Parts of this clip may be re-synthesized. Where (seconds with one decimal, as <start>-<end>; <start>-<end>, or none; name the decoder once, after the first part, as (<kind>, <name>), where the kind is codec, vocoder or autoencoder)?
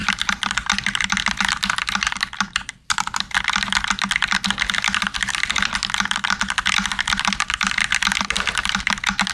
none